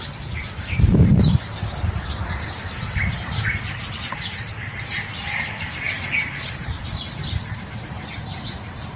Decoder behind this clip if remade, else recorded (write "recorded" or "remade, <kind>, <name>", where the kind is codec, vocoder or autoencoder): remade, vocoder, BigVGAN v2